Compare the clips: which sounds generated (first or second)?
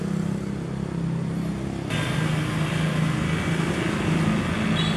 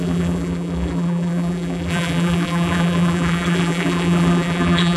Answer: second